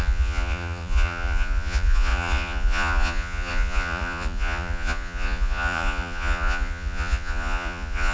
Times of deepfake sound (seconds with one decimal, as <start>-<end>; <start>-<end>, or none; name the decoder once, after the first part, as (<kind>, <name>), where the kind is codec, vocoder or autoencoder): 0.0-8.1 (vocoder, Vocos)